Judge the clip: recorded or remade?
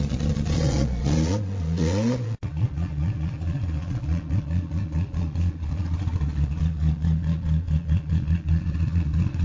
remade